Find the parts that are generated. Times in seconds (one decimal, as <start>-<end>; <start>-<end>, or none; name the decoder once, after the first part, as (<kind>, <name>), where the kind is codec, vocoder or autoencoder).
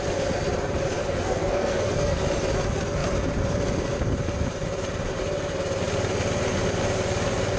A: 1.0-2.2 (codec, SNAC)